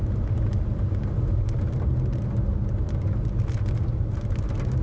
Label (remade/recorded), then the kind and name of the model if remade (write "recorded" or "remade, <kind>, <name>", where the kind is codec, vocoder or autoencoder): recorded